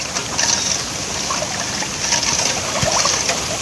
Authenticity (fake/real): real